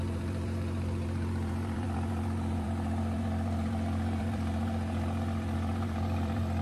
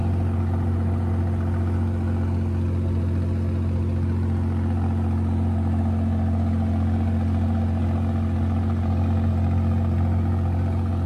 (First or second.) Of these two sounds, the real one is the second